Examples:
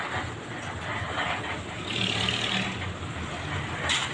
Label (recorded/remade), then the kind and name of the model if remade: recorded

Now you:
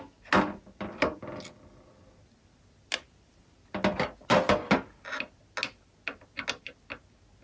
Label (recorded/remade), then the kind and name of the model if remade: recorded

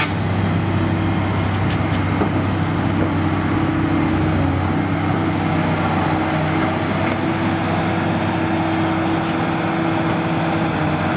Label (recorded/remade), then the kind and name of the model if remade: recorded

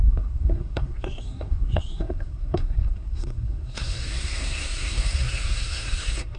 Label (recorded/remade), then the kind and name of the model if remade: remade, codec, SNAC